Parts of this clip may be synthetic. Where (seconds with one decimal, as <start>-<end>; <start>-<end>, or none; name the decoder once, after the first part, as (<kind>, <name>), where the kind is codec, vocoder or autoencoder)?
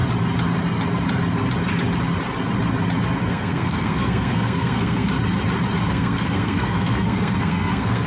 3.3-5.1 (codec, SNAC); 5.9-8.1